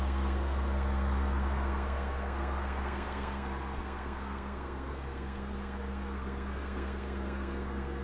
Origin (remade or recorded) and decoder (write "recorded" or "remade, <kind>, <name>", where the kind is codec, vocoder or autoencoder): remade, codec, SNAC